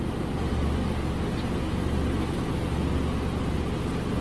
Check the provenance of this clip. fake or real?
real